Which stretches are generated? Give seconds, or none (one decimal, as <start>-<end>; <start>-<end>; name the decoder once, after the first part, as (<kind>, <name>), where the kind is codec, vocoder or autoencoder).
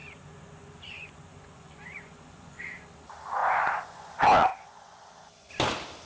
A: 0.0-2.6 (vocoder, Vocos); 3.4-4.1; 4.5-5.5